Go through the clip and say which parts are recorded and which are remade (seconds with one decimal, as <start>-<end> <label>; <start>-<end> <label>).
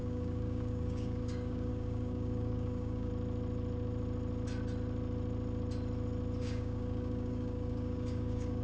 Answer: 0.0-3.1 remade; 3.1-6.4 recorded; 6.4-8.6 remade